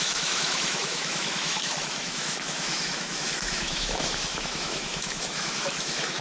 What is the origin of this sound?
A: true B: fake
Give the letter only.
B